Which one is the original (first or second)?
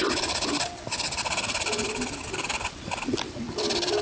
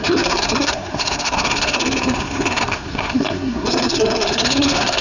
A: first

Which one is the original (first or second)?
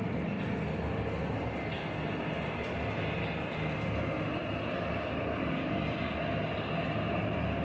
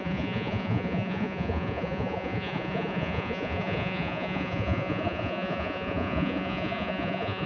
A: first